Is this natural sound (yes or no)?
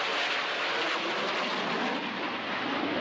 yes